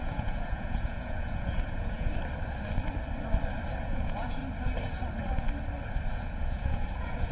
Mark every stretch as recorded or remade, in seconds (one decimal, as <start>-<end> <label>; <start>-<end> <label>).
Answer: 0.0-2.1 remade; 2.1-3.8 recorded; 3.8-4.4 remade; 4.4-6.1 recorded; 6.1-7.3 remade